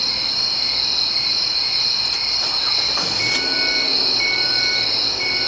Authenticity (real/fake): real